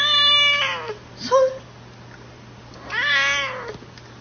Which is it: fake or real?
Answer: real